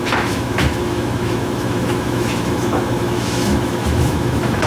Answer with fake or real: fake